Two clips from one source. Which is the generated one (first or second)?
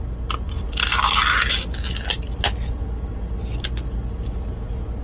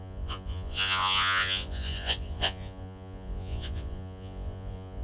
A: second